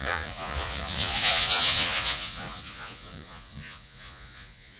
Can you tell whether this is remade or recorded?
remade